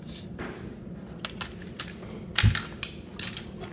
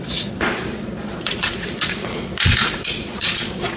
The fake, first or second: second